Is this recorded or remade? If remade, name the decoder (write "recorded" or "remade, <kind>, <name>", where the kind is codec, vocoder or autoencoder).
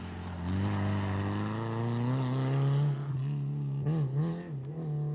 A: recorded